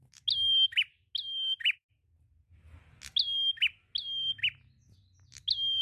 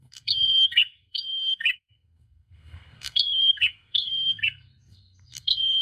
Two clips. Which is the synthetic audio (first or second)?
second